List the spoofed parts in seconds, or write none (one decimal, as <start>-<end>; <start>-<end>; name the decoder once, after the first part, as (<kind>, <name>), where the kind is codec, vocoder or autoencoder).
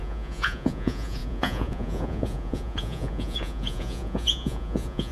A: 0.0-5.1 (vocoder, Vocos)